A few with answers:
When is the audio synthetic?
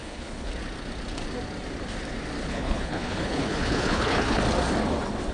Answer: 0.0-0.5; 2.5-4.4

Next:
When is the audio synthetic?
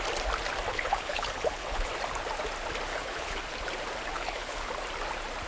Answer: 0.7-1.9; 2.9-3.4; 4.1-4.7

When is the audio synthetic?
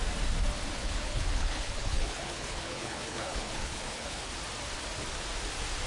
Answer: 0.8-4.3